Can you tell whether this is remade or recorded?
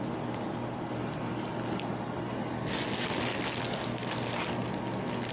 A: recorded